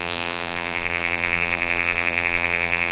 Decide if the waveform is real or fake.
fake